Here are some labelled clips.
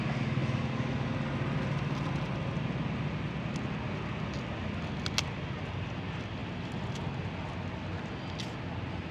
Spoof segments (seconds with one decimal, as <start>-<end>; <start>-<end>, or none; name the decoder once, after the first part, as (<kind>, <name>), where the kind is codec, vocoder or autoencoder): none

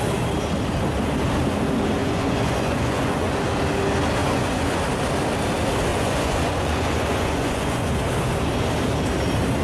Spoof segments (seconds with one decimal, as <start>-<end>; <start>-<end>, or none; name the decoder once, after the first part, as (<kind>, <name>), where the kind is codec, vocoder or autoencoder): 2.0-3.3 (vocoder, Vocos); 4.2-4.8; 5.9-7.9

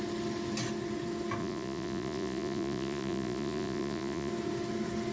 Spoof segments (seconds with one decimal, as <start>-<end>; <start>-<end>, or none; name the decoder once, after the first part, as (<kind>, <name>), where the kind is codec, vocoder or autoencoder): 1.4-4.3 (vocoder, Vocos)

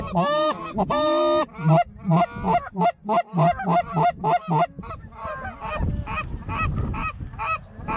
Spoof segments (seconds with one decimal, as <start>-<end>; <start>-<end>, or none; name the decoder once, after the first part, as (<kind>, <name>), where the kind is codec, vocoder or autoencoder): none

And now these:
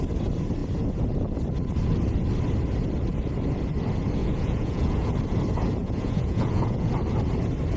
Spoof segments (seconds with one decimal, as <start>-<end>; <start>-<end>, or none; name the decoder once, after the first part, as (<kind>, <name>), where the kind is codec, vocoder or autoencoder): 4.2-5.1 (vocoder, Vocos); 5.8-6.9

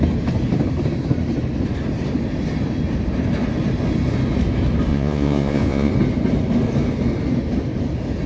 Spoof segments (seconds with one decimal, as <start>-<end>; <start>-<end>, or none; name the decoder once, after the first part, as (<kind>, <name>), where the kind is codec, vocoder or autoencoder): 4.9-5.9 (vocoder, Vocos)

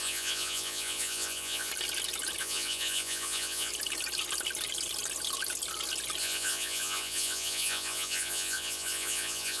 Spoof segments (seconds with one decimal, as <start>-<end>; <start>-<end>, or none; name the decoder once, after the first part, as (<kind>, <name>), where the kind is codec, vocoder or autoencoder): 0.0-1.7 (vocoder, Vocos); 2.4-3.7; 6.2-9.6